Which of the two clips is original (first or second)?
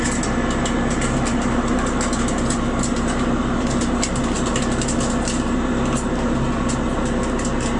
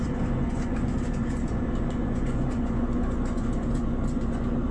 first